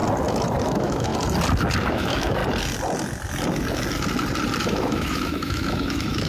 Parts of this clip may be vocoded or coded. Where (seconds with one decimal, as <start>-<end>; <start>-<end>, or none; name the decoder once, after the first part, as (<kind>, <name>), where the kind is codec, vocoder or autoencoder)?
0.6-1.1 (autoencoder, DAC-VAE); 1.9-2.4; 4.6-6.3